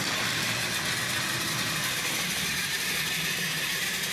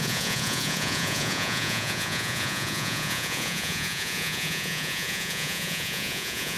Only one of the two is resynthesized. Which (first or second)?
second